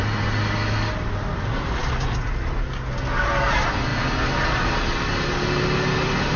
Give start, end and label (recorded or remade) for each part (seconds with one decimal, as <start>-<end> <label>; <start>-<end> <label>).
0.0-6.4 recorded